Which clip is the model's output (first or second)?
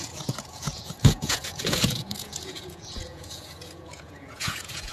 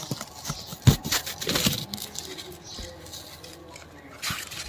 first